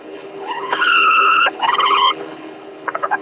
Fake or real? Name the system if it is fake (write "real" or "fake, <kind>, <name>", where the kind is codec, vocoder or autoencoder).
fake, codec, HILCodec